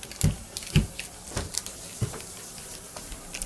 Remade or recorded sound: recorded